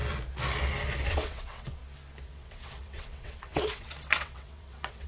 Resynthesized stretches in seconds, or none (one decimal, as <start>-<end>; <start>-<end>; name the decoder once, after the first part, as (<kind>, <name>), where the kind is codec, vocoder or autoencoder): 1.1-1.8 (vocoder, WaveNeXt); 2.3-5.1